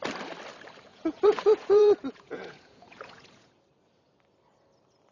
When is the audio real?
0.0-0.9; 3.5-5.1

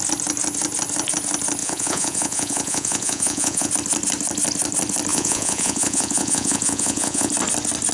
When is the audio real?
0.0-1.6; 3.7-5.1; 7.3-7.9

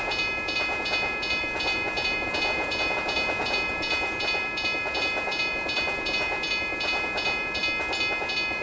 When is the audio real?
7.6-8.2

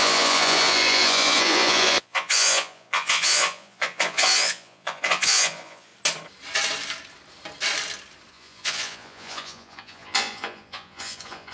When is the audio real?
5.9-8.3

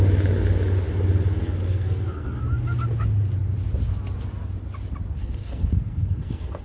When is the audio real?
0.0-1.4; 2.4-5.2